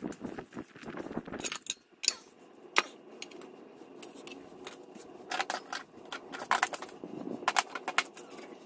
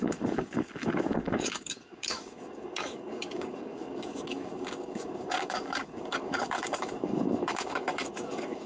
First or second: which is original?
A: first